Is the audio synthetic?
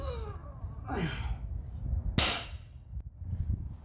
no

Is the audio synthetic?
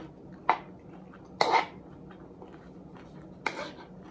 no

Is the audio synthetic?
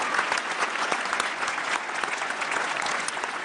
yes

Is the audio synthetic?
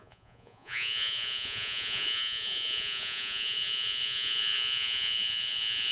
yes